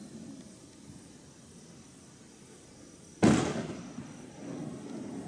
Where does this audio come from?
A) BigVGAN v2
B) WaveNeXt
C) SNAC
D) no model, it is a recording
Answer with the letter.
D